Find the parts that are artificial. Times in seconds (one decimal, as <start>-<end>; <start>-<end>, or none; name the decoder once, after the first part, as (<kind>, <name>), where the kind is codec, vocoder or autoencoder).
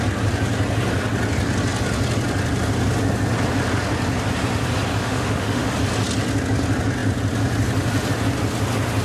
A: 5.0-5.7 (autoencoder, DAC-VAE)